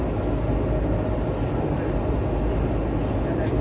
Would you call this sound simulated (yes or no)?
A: no